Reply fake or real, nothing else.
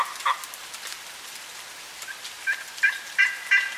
real